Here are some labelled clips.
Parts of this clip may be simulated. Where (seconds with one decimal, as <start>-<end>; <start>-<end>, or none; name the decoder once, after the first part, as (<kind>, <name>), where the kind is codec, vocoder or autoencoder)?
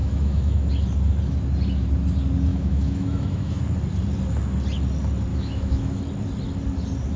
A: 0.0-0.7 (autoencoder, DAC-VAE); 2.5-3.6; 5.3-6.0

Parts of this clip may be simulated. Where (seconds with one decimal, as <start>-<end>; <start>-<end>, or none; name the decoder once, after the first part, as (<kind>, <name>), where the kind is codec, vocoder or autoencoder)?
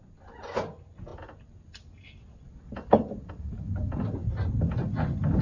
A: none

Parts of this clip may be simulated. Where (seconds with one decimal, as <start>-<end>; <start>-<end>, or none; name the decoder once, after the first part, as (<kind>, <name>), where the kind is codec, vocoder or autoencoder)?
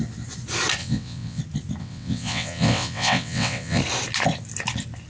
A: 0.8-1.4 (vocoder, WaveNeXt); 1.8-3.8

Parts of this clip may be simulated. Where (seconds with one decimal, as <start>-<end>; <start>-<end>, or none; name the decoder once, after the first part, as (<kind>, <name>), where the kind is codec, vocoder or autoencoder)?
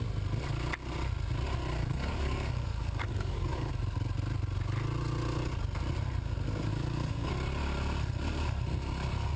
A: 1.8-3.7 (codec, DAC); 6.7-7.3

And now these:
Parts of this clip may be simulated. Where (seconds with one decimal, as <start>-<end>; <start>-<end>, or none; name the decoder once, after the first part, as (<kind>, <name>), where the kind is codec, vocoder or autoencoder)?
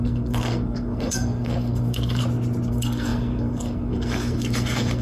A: 0.0-2.2 (codec, SNAC); 2.7-5.0